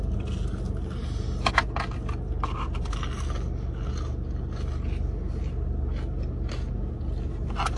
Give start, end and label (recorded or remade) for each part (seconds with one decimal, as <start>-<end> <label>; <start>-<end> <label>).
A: 0.0-7.8 recorded